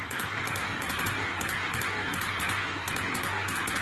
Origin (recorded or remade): remade